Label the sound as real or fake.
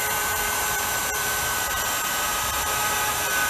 fake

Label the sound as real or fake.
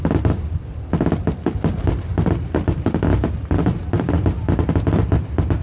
fake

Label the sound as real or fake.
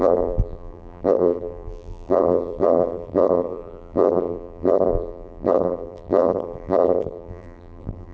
fake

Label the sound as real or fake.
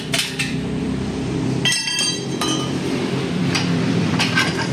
fake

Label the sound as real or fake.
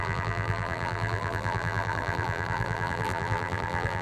fake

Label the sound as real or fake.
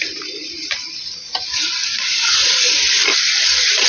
fake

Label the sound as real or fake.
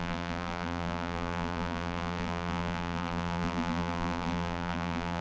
fake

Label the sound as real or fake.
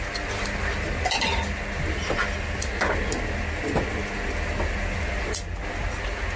real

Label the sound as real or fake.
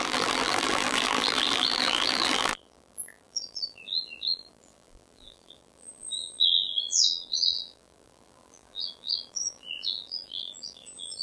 fake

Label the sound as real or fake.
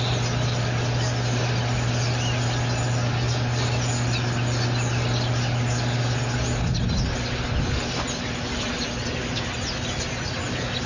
real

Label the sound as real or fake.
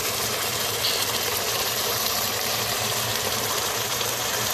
fake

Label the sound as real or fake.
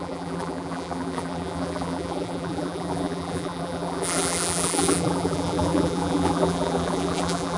fake